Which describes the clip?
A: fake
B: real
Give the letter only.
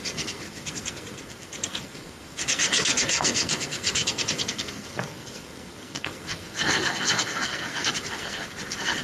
A